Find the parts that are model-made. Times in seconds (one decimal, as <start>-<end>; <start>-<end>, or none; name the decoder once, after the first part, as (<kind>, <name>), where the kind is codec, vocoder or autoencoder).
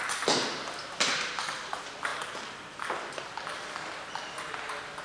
none